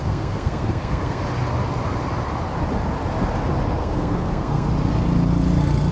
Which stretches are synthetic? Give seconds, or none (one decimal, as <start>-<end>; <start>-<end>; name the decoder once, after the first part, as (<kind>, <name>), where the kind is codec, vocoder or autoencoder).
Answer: 0.0-1.2 (codec, SNAC); 3.8-4.7